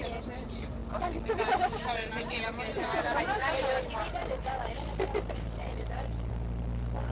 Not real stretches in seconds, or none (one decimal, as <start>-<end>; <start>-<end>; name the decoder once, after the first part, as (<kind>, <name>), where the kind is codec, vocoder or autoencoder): 0.0-0.8 (vocoder, BigVGAN v2); 3.2-7.1